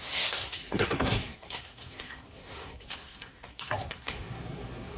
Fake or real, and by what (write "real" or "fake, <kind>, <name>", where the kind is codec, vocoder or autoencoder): fake, codec, SNAC